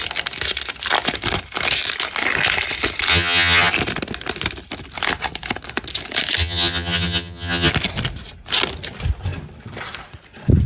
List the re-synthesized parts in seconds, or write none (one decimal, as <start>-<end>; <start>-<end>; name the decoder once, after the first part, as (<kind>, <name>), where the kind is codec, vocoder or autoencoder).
3.1-3.7 (vocoder, HiFi-GAN); 6.4-7.7